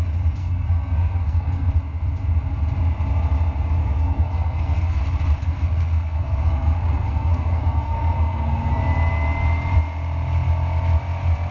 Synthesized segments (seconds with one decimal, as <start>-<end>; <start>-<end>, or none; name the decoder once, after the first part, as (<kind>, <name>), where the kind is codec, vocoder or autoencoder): 0.4-1.7 (codec, SNAC); 3.8-5.0; 5.4-8.8